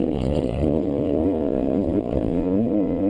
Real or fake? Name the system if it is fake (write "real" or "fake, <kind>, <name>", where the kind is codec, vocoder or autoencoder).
fake, vocoder, Vocos